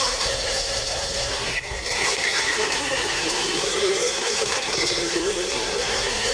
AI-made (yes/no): yes